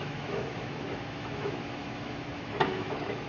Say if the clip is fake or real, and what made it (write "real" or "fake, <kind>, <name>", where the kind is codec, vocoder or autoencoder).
fake, autoencoder, DAC-VAE